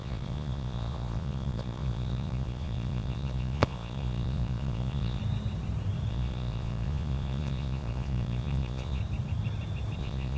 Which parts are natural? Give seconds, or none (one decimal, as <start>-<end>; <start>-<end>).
5.2-6.1; 9.0-10.0